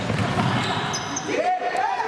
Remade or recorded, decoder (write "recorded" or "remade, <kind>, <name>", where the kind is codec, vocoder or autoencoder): recorded